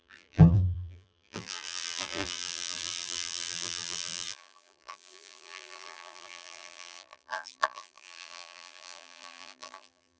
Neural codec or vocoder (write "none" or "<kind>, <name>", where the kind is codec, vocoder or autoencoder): vocoder, BigVGAN v2